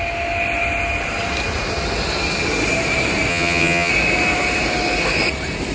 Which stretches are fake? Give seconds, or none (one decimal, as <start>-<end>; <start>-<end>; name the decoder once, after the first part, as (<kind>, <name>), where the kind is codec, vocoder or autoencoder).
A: 3.3-3.9 (vocoder, HiFi-GAN)